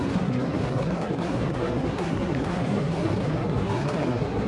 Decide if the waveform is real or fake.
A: fake